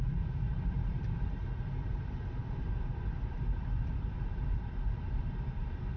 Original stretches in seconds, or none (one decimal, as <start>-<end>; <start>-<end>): none